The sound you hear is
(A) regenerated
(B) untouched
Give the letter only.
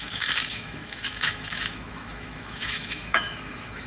A